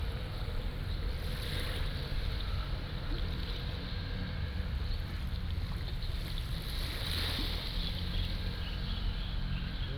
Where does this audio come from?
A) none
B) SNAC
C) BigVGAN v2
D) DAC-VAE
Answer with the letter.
A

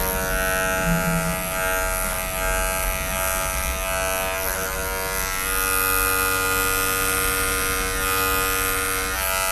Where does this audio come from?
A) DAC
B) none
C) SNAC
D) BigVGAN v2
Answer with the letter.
B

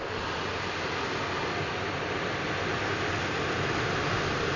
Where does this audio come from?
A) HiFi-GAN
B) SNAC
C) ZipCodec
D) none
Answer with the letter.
D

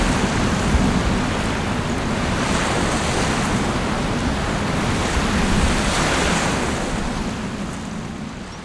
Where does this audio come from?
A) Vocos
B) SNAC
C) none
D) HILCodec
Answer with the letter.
C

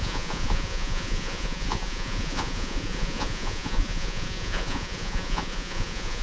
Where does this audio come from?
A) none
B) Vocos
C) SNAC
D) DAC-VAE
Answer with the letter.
B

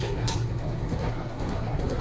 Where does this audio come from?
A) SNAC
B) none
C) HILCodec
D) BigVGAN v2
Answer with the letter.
A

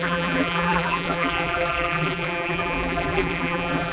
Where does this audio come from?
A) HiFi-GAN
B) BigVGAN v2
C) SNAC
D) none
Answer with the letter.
B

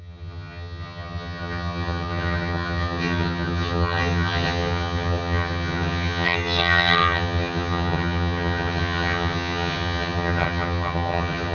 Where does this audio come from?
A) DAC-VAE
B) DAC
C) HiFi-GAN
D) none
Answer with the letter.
C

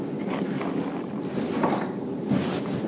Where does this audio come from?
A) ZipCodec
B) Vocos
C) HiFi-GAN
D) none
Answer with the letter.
D